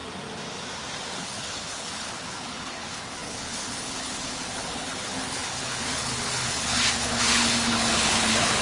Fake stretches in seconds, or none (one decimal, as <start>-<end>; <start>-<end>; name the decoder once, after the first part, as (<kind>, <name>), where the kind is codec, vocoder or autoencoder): 1.2-8.6 (codec, HILCodec)